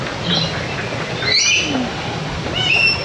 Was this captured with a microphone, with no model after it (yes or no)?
yes